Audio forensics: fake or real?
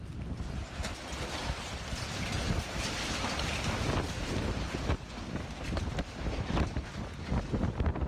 real